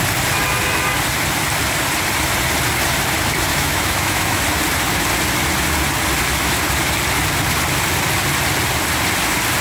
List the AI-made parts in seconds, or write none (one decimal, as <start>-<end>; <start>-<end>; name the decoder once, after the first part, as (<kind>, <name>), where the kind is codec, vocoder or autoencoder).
3.5-4.4 (autoencoder, DAC-VAE)